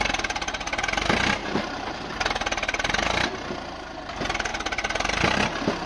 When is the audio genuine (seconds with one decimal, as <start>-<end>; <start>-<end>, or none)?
0.0-1.4; 1.9-5.9